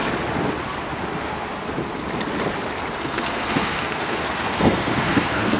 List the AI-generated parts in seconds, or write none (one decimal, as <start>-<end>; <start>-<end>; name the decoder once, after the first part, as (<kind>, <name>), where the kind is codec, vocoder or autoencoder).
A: 3.0-5.6 (codec, SNAC)